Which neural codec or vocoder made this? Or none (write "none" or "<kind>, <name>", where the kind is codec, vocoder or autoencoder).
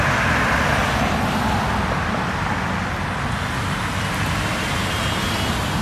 none